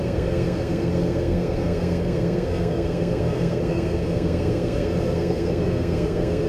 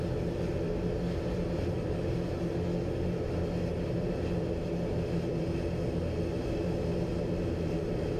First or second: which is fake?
first